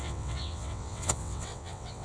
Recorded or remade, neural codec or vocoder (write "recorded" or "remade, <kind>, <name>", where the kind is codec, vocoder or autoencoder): remade, vocoder, WaveNeXt